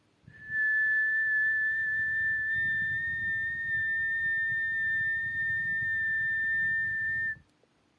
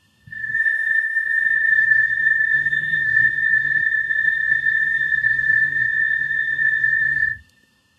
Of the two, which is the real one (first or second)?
first